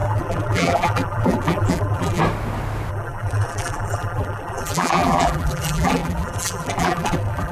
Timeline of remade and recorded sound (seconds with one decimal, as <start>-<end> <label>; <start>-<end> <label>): 0.0-2.2 remade; 2.2-2.9 recorded; 2.9-7.5 remade

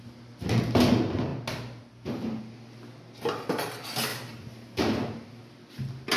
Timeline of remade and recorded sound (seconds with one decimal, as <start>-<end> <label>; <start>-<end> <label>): 0.0-6.2 recorded

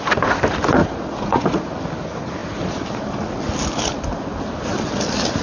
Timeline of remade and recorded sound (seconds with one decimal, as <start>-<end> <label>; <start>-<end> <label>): 0.0-0.8 recorded; 0.8-1.7 remade; 1.7-5.4 recorded

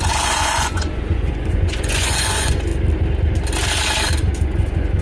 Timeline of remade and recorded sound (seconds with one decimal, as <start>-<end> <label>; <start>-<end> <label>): 0.0-2.7 remade; 2.7-4.3 recorded; 4.3-5.0 remade

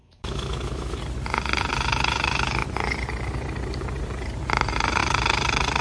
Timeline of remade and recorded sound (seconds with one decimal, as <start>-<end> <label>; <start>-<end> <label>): 0.0-1.0 remade; 1.0-5.8 recorded

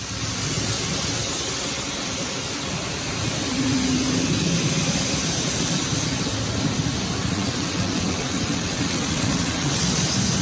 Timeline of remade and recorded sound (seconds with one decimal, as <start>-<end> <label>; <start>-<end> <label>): 0.0-7.3 recorded; 7.3-9.8 remade; 9.8-10.4 recorded

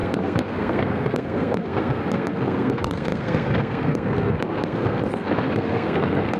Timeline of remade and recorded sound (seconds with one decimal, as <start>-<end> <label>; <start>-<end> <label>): 0.0-6.4 remade

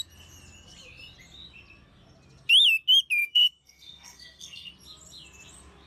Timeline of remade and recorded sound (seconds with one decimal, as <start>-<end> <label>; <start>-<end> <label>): 0.0-3.2 recorded; 3.2-4.7 remade; 4.7-5.9 recorded